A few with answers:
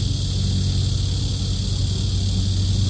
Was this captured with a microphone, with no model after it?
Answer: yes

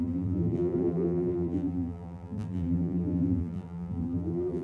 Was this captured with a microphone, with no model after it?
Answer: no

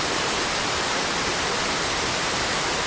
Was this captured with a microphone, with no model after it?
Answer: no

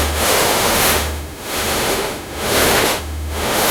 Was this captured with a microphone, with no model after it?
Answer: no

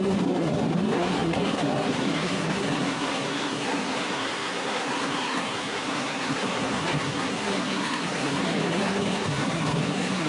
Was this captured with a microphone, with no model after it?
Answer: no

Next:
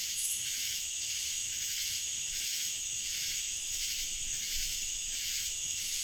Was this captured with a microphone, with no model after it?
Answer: no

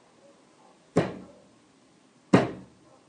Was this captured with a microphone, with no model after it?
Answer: yes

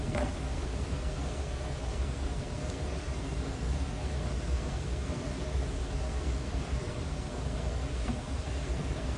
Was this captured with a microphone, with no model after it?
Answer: no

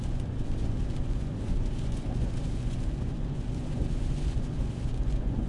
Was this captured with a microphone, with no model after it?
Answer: no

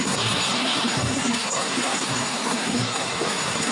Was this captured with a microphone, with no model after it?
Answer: no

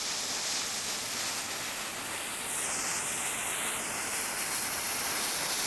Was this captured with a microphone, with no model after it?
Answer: yes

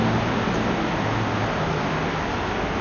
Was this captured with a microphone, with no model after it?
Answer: yes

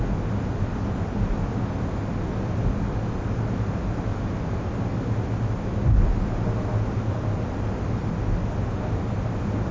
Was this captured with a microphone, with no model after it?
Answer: yes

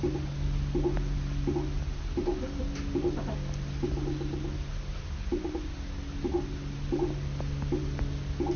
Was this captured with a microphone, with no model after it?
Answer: yes